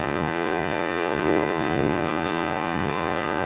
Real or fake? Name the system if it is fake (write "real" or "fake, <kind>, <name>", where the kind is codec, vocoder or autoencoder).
fake, vocoder, Vocos